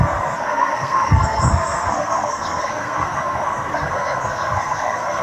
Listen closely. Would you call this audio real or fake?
fake